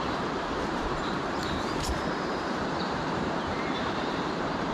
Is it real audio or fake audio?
fake